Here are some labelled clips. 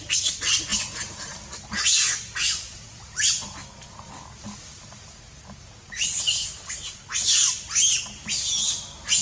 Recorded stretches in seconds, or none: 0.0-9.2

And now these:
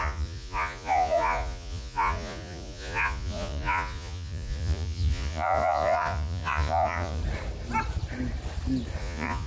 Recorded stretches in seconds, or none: 7.2-9.0

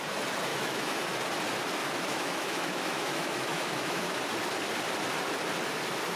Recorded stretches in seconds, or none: 0.0-0.5; 1.0-1.8; 4.2-6.2

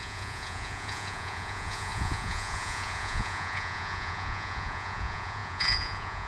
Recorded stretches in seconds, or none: none